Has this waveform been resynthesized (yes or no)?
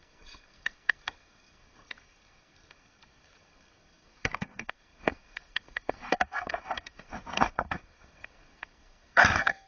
yes